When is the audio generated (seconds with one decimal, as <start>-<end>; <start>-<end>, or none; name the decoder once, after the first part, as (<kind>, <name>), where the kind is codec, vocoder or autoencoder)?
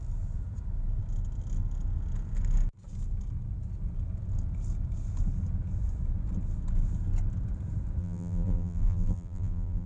8.0-9.9 (vocoder, BigVGAN v2)